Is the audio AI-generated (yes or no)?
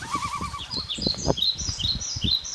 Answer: yes